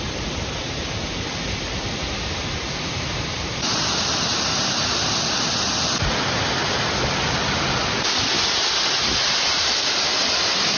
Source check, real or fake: real